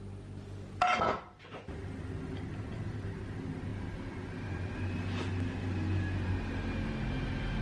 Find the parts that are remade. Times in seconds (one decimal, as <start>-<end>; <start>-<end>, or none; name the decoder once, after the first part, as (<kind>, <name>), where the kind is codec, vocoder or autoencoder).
none

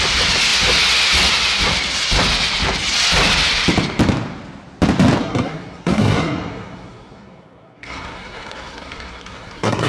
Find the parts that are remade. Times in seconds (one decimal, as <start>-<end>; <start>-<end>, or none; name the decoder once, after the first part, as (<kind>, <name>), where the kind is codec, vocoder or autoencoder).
5.2-9.9 (codec, SNAC)

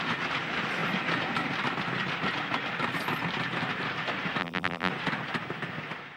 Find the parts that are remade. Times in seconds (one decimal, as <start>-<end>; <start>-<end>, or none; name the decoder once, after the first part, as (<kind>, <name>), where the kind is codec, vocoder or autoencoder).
4.4-4.9 (vocoder, BigVGAN v2)

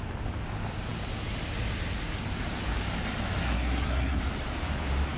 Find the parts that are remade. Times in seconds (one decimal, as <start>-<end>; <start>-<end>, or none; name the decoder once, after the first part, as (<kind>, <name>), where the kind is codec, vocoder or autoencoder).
3.4-4.2 (codec, SNAC)

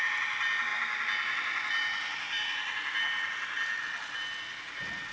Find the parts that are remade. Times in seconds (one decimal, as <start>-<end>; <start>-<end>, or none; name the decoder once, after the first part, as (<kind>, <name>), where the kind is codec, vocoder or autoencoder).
none

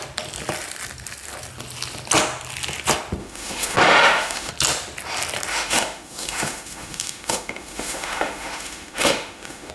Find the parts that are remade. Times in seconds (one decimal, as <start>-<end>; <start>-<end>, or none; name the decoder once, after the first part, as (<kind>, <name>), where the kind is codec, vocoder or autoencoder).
3.2-4.5 (autoencoder, DAC-VAE); 5.5-9.7

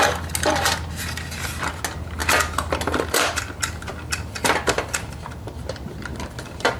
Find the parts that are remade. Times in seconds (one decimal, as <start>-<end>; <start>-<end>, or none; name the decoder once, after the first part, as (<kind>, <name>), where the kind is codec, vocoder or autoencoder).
none

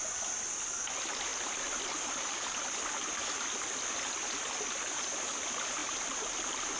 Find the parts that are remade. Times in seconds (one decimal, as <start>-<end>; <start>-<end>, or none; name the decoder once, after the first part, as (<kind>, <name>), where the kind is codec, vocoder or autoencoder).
none